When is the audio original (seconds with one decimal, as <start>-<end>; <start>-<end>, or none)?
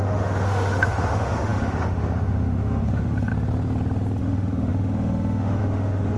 3.3-4.2